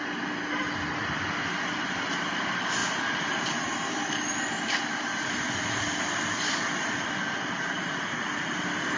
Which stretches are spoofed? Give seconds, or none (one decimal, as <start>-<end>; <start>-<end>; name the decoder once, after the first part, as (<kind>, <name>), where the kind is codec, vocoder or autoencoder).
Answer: none